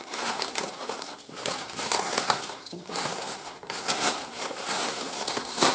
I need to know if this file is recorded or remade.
remade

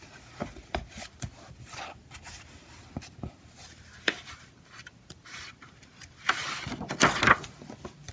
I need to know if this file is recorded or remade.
recorded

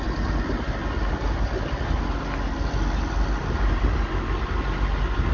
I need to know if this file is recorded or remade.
recorded